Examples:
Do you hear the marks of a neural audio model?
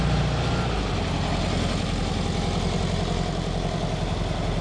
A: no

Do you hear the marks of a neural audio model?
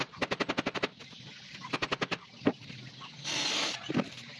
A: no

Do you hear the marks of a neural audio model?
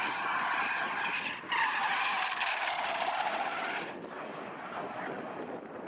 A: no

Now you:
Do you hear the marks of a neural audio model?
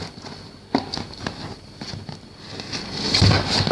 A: no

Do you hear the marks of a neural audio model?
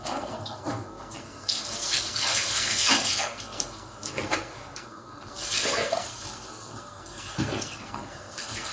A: yes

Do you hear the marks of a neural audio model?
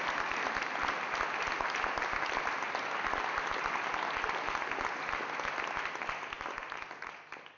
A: no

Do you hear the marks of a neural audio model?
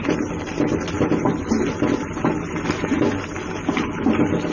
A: no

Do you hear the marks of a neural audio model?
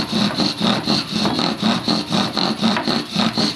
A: no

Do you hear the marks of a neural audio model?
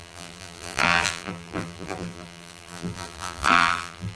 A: yes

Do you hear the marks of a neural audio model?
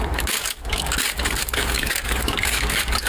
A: yes